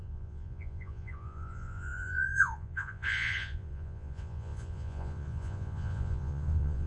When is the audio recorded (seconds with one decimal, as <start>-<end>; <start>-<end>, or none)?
none